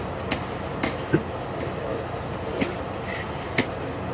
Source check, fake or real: real